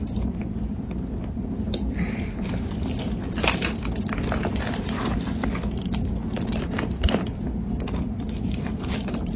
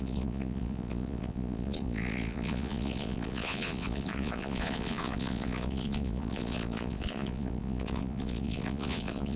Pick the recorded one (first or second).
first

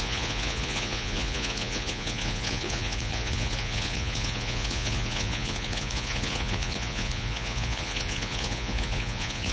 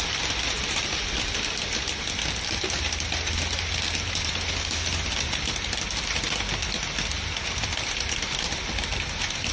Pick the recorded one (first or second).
second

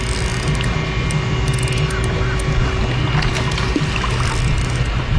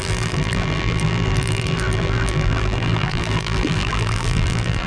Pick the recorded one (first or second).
first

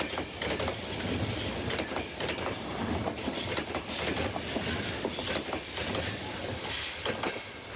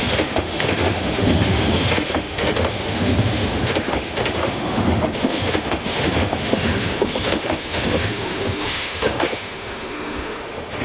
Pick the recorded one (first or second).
first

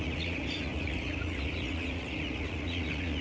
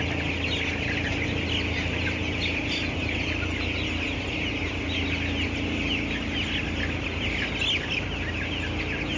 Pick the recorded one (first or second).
second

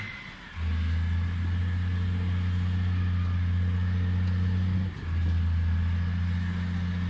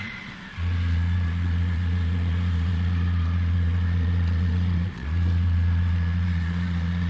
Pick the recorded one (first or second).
first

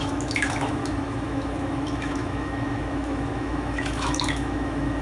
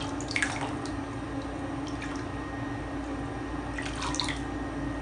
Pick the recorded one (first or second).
second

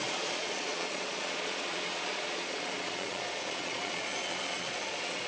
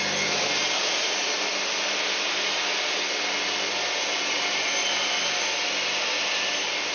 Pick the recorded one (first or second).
second